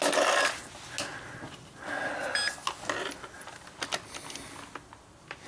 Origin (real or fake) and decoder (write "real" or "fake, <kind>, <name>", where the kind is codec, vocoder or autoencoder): real